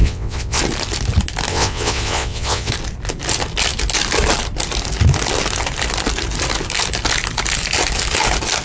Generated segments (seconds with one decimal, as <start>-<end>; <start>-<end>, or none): 0.0-0.6; 1.5-2.7